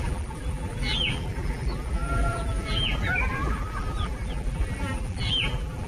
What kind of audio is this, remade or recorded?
remade